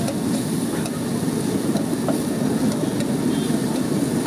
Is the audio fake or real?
real